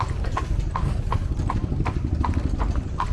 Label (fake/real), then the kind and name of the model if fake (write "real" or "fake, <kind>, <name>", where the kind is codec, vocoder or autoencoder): real